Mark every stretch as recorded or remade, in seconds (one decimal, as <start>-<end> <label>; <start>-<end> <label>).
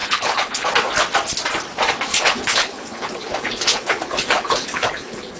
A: 0.0-0.7 remade; 0.7-2.1 recorded; 2.1-5.4 remade